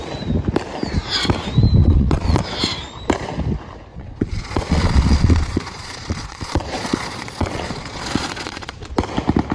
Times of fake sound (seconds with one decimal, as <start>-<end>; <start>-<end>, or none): 1.8-2.4; 3.9-8.9